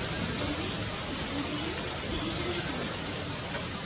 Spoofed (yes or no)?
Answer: no